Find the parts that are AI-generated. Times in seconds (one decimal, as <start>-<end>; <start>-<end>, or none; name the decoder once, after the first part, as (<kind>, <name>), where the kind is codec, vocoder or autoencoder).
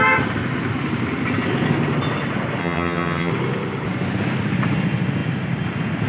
2.6-3.3 (vocoder, HiFi-GAN)